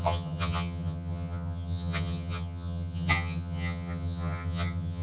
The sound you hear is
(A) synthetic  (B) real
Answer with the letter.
A